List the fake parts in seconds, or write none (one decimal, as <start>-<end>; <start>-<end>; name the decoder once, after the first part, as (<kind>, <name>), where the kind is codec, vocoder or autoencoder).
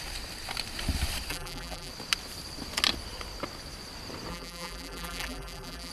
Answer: 1.3-1.9 (vocoder, BigVGAN v2); 4.3-5.9